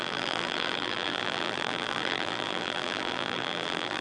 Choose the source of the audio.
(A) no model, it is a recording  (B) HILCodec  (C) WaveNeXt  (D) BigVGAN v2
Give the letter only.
D